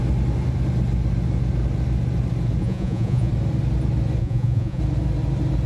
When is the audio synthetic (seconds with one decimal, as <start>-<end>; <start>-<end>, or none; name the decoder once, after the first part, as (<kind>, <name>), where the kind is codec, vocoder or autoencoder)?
2.6-3.3 (vocoder, Vocos); 4.2-4.8